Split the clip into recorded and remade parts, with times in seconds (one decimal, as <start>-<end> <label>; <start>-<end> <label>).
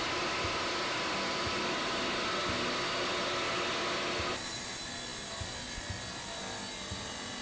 0.0-1.3 recorded; 1.3-2.0 remade; 2.0-5.1 recorded; 5.1-5.8 remade; 5.8-7.4 recorded